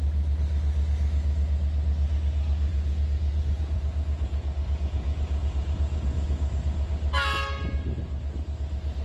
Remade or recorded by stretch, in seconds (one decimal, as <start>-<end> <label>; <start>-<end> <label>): 0.0-2.7 recorded; 2.7-7.1 remade; 7.1-9.0 recorded